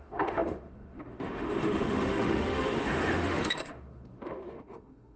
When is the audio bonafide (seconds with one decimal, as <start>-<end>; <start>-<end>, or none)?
none